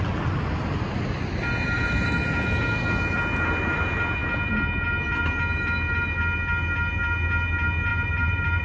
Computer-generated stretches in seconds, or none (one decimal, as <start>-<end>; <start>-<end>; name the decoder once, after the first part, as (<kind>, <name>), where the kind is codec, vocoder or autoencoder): 7.9-8.6 (vocoder, BigVGAN v2)